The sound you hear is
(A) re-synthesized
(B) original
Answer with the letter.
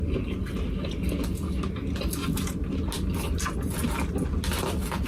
B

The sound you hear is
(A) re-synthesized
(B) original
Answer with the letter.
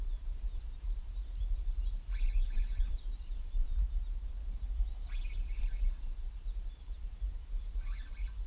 A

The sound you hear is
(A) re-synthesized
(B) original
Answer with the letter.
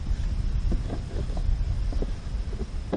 B